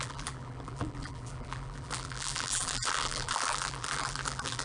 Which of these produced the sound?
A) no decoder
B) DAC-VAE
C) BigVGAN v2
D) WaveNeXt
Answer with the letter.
C